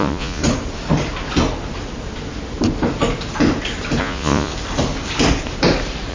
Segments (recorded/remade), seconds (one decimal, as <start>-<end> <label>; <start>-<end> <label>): 0.0-0.4 remade; 0.4-4.0 recorded; 4.0-4.5 remade; 4.5-6.1 recorded

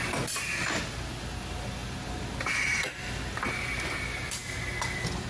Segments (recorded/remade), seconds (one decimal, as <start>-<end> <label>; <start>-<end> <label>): 0.0-5.3 recorded